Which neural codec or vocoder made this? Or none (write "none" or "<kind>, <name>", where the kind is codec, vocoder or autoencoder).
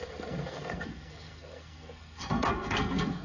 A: codec, SNAC